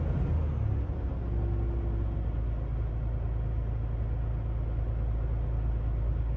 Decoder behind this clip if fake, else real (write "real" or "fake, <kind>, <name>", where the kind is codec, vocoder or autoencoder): real